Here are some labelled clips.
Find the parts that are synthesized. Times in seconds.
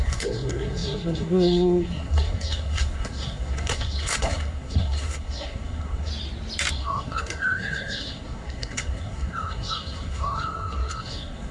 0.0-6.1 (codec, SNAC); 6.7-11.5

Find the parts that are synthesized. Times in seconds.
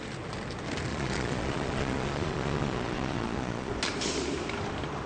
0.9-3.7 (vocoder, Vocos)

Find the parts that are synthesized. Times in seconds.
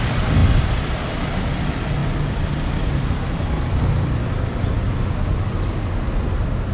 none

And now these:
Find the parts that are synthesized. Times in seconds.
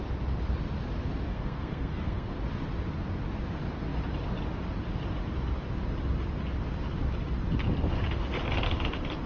1.3-2.3 (codec, SNAC)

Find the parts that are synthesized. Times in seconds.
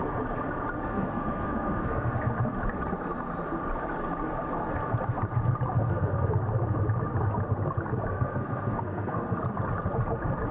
0.8-2.1 (codec, SNAC); 5.8-6.3; 8.1-9.4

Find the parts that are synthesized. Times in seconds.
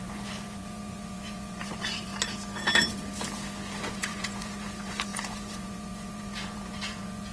0.0-2.1 (vocoder, Vocos); 3.8-7.3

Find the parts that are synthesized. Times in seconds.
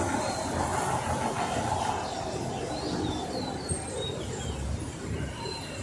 none